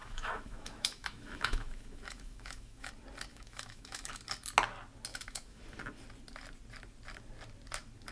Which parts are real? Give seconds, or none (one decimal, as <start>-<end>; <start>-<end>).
2.9-3.3; 4.2-5.1; 5.6-8.1